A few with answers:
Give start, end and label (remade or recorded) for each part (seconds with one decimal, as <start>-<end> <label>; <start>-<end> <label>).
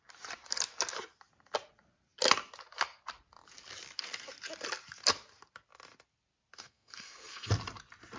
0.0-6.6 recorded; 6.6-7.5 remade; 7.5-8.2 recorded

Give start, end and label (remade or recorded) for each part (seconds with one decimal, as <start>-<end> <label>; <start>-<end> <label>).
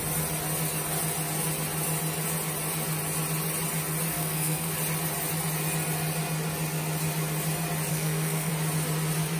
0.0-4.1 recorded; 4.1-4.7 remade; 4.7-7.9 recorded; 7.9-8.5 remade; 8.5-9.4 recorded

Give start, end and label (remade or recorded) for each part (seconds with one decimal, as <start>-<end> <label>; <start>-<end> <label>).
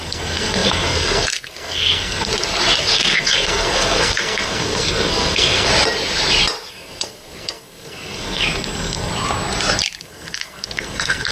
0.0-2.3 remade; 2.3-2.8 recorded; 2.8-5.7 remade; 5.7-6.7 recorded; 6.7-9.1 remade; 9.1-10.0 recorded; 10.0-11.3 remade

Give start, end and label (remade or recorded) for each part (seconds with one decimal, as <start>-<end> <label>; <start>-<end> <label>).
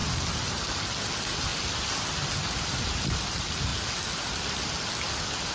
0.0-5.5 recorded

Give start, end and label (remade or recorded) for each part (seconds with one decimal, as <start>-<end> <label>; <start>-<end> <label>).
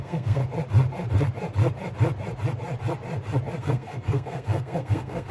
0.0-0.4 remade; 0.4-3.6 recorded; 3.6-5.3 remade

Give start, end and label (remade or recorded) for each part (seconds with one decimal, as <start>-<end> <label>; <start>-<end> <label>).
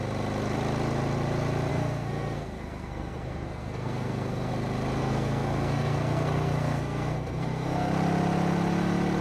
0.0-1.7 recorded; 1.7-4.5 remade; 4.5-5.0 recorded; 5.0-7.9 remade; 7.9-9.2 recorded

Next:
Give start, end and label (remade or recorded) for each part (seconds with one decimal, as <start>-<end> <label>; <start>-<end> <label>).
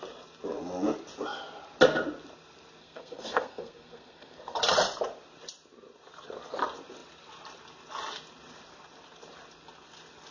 0.0-2.8 recorded; 2.8-4.6 remade; 4.6-10.3 recorded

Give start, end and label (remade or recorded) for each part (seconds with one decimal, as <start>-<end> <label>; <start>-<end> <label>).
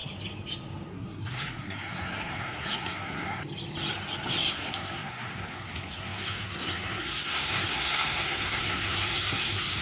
0.0-0.9 recorded; 0.9-3.4 remade; 3.4-4.4 recorded; 4.4-9.8 remade